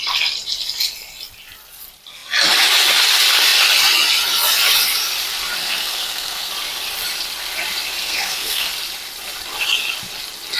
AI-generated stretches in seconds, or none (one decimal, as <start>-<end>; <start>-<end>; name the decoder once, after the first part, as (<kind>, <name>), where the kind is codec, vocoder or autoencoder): 5.6-6.5 (codec, SNAC); 8.0-8.7